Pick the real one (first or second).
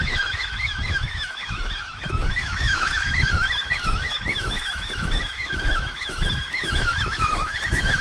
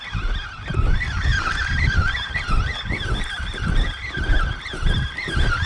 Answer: second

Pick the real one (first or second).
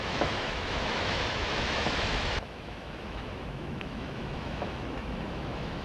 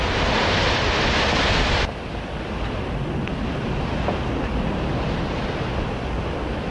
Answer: second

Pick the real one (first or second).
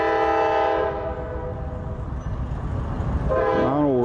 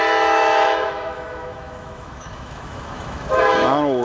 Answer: first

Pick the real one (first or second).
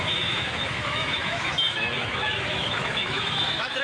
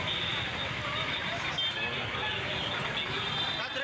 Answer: second